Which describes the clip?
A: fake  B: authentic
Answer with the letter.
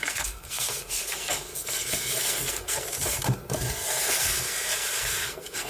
A